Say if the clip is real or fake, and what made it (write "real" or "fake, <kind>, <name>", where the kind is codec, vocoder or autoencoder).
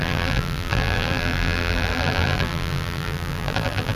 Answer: fake, vocoder, BigVGAN v2